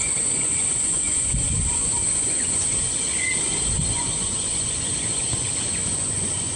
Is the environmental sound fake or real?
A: fake